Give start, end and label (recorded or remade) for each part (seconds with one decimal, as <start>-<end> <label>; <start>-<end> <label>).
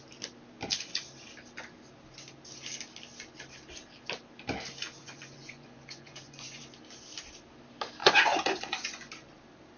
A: 0.0-5.0 recorded; 5.0-6.6 remade; 6.6-8.0 recorded; 8.0-9.1 remade; 9.1-9.8 recorded